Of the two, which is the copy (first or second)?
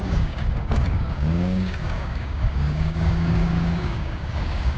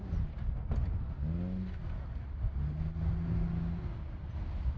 first